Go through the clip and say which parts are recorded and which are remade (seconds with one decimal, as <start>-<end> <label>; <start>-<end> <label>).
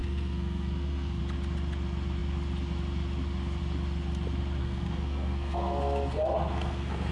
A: 0.0-1.2 remade; 1.2-4.6 recorded; 4.6-7.1 remade